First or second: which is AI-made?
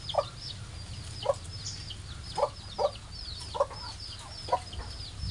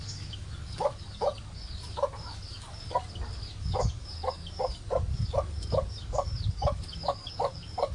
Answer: second